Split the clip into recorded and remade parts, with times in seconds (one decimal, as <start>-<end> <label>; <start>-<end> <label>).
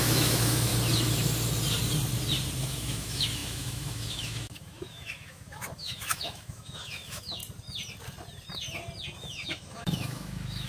0.0-0.7 remade; 0.7-2.6 recorded; 2.6-7.4 remade; 7.4-9.2 recorded; 9.2-10.7 remade